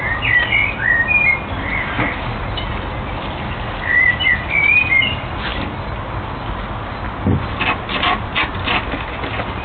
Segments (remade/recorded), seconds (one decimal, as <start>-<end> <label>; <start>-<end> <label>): 0.0-9.6 recorded